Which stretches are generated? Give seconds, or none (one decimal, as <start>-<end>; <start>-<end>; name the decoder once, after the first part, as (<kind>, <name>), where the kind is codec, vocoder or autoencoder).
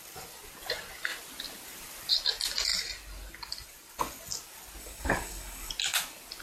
4.8-5.7 (codec, DAC)